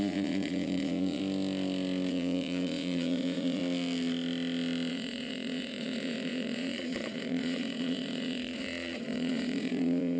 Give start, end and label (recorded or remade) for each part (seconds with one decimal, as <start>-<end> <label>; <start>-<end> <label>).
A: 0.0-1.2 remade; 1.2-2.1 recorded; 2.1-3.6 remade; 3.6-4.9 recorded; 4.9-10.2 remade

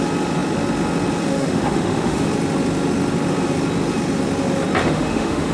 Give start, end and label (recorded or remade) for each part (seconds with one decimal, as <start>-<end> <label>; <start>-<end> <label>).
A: 0.0-1.3 recorded; 1.3-2.3 remade; 2.3-4.8 recorded; 4.8-5.5 remade

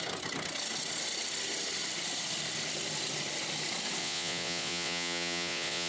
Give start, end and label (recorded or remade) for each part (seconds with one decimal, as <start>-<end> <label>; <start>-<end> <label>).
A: 0.0-4.0 recorded; 4.0-5.9 remade

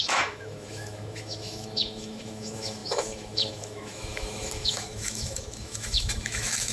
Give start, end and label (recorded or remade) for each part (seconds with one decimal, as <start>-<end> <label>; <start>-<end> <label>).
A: 0.0-6.7 remade

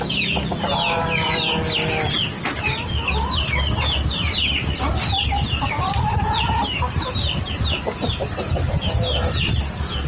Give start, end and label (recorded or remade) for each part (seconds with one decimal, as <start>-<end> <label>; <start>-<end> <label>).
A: 0.0-4.2 recorded; 4.2-7.4 remade; 7.4-10.1 recorded

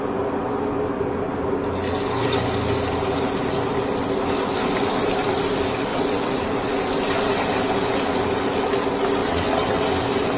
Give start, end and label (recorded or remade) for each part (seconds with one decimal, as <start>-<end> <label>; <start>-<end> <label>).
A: 0.0-5.9 recorded; 5.9-6.4 remade; 6.4-9.2 recorded; 9.2-9.8 remade; 9.8-10.4 recorded

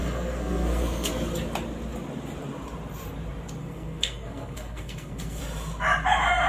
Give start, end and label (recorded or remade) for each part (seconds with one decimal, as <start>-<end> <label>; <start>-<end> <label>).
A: 0.0-1.1 remade; 1.1-3.6 recorded; 3.6-5.4 remade; 5.4-6.5 recorded